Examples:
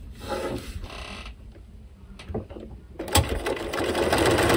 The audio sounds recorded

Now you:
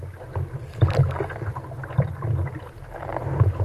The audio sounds recorded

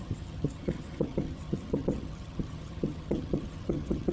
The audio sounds remade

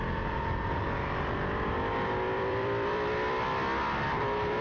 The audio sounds remade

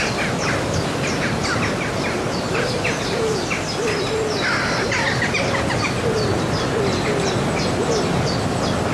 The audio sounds recorded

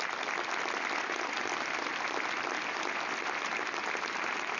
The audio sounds recorded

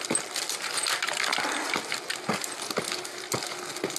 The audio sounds recorded